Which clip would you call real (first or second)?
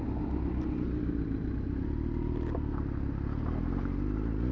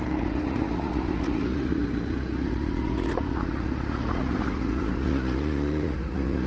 first